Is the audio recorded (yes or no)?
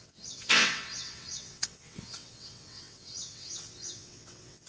no